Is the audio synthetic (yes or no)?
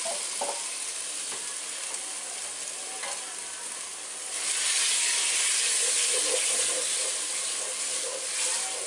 no